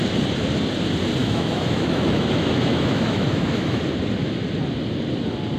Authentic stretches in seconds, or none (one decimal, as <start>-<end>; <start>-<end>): 0.0-1.2; 3.8-5.6